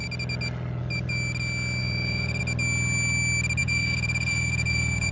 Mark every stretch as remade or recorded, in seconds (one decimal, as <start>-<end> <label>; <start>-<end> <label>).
0.0-1.8 recorded; 1.8-2.4 remade; 2.4-3.6 recorded; 3.6-5.1 remade